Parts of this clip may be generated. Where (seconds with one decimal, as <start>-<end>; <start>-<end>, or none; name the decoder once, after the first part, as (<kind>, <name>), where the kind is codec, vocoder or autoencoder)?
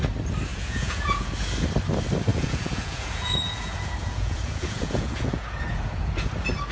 0.5-1.3 (vocoder, Vocos); 2.3-6.3